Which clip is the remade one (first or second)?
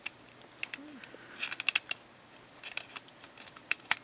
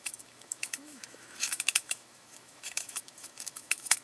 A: second